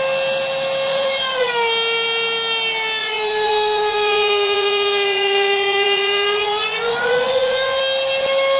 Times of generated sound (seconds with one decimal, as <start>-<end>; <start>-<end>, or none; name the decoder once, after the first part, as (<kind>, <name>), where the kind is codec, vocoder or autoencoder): 0.9-1.5 (vocoder, Vocos); 3.0-7.8